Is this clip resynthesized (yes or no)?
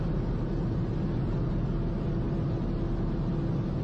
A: no